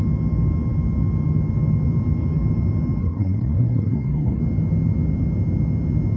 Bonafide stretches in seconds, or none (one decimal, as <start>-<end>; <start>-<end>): 0.0-3.0; 4.4-6.2